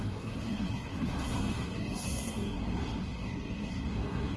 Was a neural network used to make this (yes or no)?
yes